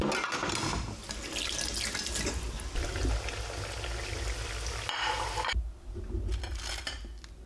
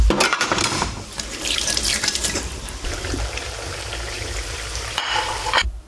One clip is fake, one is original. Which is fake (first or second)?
second